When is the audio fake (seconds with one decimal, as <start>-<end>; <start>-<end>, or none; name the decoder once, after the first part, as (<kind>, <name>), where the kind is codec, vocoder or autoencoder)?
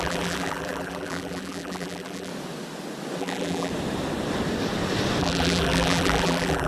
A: 0.0-2.3 (vocoder, BigVGAN v2); 3.2-3.7; 5.2-6.7